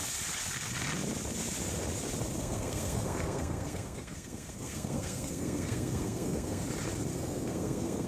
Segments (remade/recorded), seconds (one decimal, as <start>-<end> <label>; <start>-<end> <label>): 0.0-2.4 recorded; 2.4-6.6 remade; 6.6-7.1 recorded; 7.1-8.1 remade